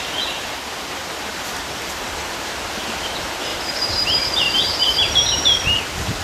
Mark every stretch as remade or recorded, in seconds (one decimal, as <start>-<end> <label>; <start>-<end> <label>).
0.0-1.3 recorded; 1.3-1.9 remade; 1.9-3.5 recorded; 3.5-5.2 remade; 5.2-6.2 recorded